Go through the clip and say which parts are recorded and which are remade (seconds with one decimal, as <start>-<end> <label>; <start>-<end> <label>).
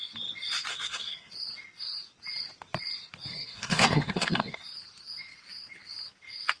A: 0.0-0.7 recorded; 0.7-1.3 remade; 1.3-3.3 recorded; 3.3-4.6 remade; 4.6-6.6 recorded